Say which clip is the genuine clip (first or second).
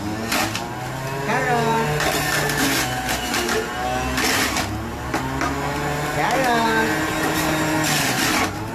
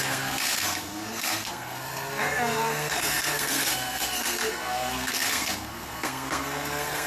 first